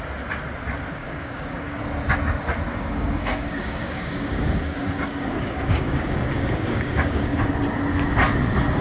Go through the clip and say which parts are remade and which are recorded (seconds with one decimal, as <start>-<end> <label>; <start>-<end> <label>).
0.0-1.0 recorded; 1.0-1.8 remade; 1.8-2.7 recorded; 2.7-7.5 remade; 7.5-8.8 recorded